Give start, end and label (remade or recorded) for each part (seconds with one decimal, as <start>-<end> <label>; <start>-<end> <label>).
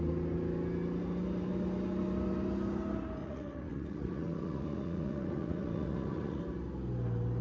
0.0-3.2 recorded; 3.2-6.4 remade; 6.4-7.4 recorded